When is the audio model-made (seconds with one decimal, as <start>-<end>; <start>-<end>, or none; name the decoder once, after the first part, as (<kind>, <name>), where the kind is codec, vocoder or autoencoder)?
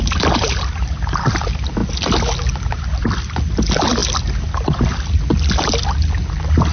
none